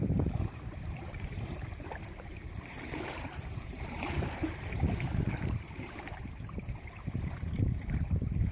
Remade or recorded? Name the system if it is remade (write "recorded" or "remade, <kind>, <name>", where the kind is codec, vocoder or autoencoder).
remade, vocoder, BigVGAN v2